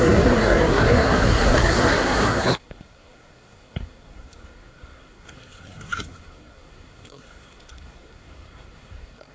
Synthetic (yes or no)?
yes